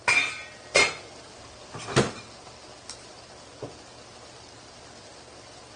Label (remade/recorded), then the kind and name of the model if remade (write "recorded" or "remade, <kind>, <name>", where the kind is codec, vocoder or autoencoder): recorded